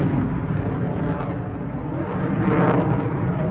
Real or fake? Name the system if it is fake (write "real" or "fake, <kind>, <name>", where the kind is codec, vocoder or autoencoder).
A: real